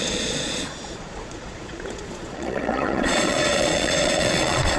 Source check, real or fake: fake